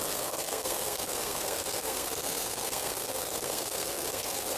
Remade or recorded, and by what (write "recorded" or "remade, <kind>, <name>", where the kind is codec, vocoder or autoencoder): remade, codec, SNAC